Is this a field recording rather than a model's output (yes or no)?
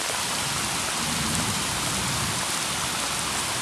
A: yes